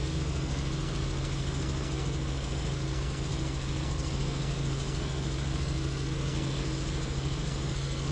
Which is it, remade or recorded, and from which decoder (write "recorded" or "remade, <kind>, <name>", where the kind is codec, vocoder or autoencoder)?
remade, codec, SNAC